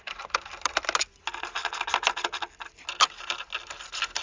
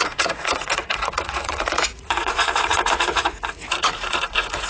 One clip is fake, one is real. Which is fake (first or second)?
second